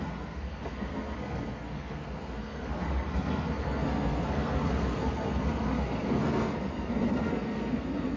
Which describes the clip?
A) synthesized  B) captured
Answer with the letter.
A